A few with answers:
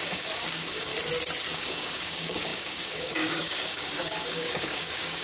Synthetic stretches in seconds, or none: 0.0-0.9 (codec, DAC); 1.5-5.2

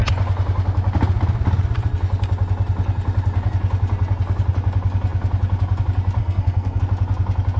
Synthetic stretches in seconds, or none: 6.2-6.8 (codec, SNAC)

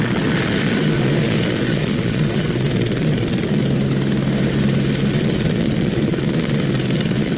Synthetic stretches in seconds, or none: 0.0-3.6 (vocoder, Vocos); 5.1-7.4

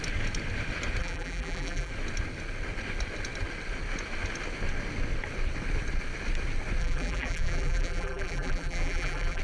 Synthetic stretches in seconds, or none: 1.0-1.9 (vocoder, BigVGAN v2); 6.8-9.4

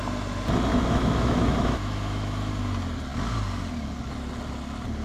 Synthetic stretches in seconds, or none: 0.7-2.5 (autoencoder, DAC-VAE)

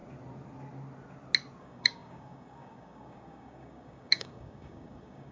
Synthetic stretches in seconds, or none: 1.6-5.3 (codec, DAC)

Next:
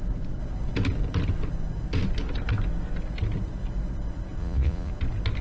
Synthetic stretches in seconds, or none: 4.4-4.9 (vocoder, Vocos)